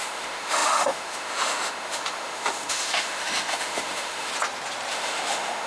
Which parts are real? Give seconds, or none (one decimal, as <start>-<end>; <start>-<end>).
4.3-4.9